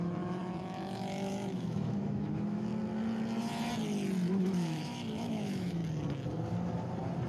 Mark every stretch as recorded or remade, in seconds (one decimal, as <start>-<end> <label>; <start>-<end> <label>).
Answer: 0.0-2.7 remade; 2.7-4.3 recorded; 4.3-5.8 remade; 5.8-7.3 recorded